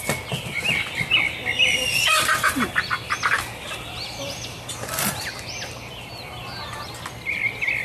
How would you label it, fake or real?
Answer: real